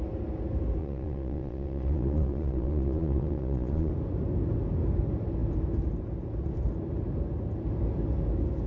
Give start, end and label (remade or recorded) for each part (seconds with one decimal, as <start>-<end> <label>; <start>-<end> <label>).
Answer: 0.0-0.8 recorded; 0.8-3.9 remade; 3.9-8.7 recorded